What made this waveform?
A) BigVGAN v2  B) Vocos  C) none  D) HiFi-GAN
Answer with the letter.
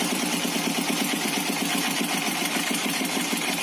A